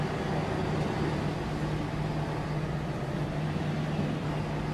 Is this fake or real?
real